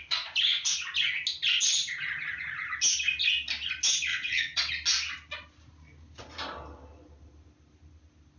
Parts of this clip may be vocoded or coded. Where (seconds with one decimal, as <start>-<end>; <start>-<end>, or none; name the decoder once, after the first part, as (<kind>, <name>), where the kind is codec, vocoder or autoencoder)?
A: 4.1-4.7 (vocoder, WaveNeXt)